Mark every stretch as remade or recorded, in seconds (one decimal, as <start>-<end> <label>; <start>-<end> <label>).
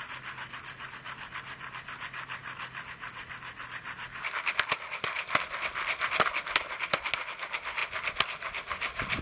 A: 0.0-9.2 recorded